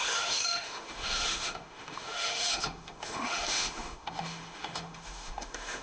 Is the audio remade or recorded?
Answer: remade